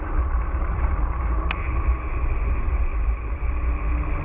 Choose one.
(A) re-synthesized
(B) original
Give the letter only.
B